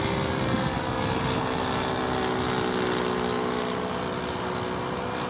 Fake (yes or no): no